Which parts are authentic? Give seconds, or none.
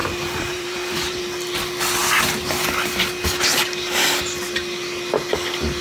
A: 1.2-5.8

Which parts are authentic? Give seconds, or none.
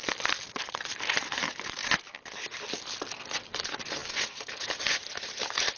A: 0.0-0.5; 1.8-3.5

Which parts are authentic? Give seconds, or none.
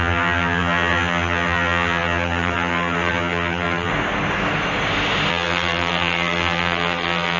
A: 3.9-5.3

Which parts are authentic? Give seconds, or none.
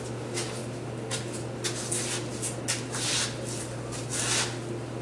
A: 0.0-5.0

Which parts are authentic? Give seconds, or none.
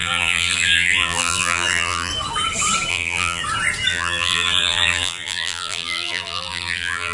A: 2.1-2.9; 3.4-3.9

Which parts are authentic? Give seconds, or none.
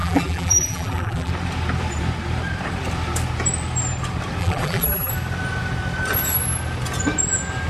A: 1.3-4.4; 5.1-7.7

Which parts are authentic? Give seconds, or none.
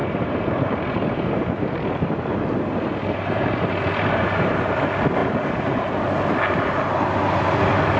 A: 4.8-5.2; 5.9-8.0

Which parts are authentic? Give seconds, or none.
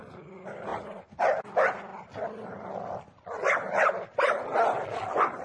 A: 0.0-1.9; 3.9-5.4